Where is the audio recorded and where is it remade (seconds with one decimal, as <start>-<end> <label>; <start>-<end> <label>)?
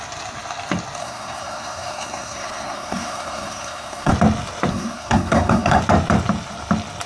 0.0-1.0 recorded; 1.0-4.1 remade; 4.1-4.7 recorded; 4.7-5.8 remade; 5.8-7.1 recorded